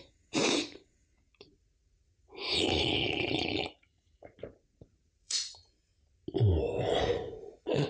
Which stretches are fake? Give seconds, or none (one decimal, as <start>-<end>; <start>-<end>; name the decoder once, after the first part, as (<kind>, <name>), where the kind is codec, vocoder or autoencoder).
0.0-5.9 (vocoder, Vocos); 7.0-7.9